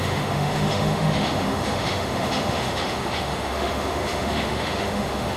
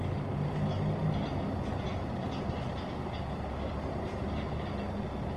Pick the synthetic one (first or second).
first